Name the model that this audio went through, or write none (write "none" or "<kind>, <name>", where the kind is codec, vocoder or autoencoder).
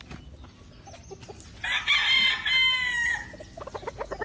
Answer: none